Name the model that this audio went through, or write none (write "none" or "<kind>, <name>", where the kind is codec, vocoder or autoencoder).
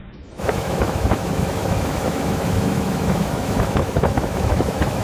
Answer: autoencoder, DAC-VAE